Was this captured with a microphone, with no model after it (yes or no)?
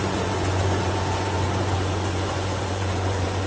no